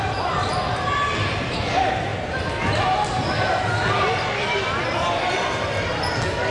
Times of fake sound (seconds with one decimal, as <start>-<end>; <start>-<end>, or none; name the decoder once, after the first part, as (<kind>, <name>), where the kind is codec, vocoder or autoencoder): none